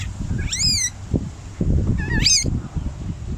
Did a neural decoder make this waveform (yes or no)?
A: no